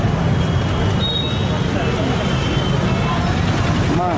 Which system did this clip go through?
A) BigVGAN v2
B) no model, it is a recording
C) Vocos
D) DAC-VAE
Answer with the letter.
B